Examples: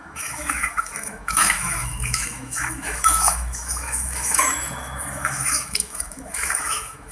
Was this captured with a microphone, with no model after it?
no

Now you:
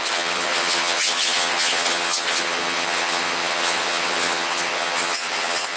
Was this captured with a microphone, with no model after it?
no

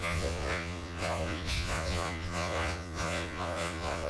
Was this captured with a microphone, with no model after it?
no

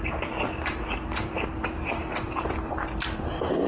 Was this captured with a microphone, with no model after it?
yes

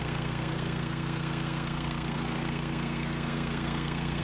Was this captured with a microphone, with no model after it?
no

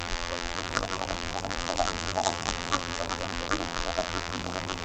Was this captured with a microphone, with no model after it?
no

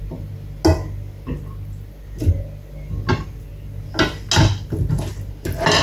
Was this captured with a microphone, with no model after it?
yes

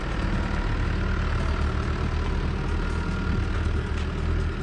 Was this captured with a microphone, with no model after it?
yes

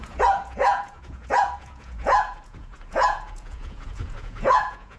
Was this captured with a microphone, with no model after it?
no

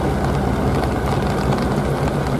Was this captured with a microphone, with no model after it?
yes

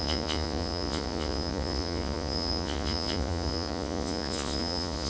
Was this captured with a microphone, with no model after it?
no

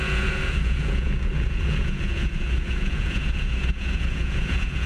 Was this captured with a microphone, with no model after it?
no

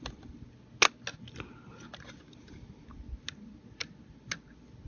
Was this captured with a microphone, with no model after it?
yes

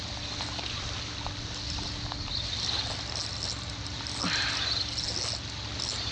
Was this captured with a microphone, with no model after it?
yes